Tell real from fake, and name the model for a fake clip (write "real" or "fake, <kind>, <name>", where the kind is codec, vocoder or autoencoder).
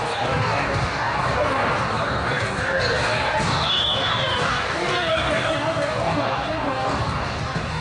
fake, codec, DAC